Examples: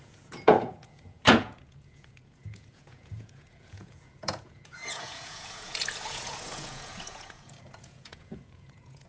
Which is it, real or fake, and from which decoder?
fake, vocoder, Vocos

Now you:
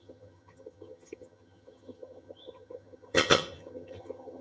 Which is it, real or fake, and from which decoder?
fake, vocoder, HiFi-GAN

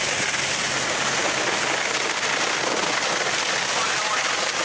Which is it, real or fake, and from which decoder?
real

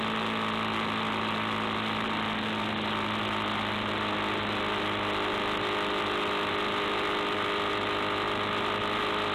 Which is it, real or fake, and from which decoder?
real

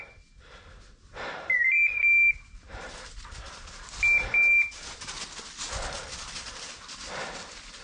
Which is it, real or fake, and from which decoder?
real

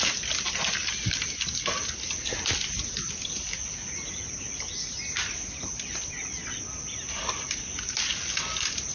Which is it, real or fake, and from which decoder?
real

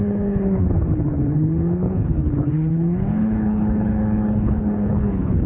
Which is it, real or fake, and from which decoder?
fake, codec, HILCodec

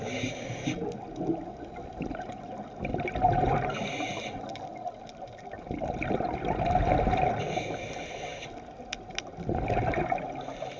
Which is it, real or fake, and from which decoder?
real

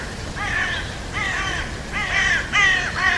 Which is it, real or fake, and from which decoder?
real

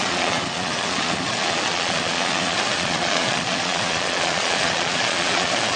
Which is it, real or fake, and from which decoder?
fake, vocoder, Vocos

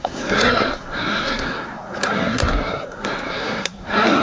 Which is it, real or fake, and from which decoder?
fake, codec, SNAC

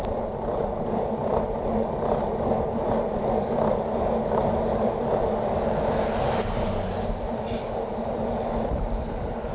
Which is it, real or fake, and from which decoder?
real